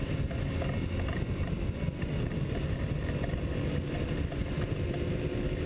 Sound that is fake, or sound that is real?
real